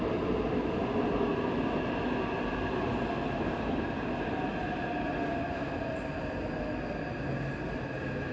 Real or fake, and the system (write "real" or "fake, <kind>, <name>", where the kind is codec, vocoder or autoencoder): real